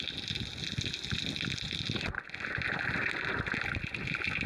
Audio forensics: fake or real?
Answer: real